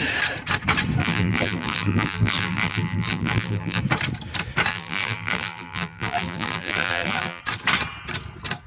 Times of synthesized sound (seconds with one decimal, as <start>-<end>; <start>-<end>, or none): 1.0-3.8; 4.7-7.4